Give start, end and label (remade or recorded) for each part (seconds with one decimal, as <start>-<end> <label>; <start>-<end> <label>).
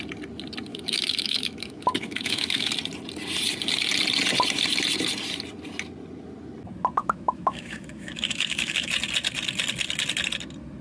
0.0-0.7 recorded; 0.7-2.7 remade; 2.7-7.0 recorded; 7.0-8.9 remade; 8.9-10.8 recorded